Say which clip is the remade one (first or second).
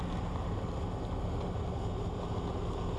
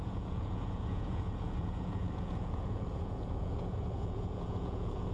second